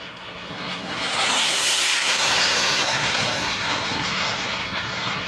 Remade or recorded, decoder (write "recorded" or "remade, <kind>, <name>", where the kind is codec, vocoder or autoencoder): remade, codec, SNAC